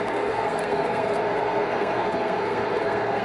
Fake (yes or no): yes